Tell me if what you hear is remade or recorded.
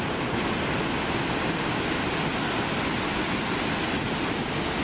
recorded